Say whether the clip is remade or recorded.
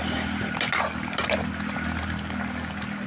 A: recorded